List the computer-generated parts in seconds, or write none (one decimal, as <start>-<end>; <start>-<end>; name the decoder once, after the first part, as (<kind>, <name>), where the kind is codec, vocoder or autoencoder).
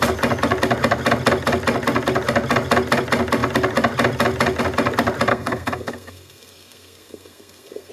5.3-7.9 (codec, SNAC)